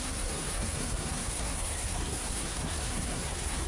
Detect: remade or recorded remade